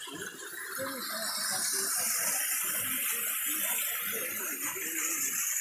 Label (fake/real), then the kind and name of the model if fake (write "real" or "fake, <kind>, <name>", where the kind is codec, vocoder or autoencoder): real